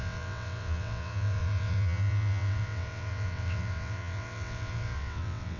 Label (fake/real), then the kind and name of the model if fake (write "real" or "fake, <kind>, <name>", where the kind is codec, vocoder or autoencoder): fake, vocoder, WaveNeXt